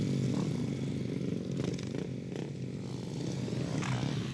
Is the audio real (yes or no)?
yes